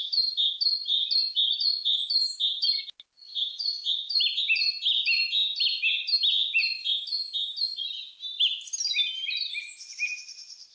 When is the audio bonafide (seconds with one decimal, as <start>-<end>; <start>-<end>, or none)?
0.0-10.7